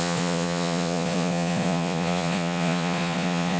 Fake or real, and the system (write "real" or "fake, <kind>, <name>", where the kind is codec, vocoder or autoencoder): fake, vocoder, Vocos